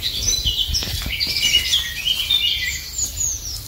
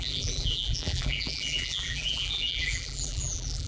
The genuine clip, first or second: first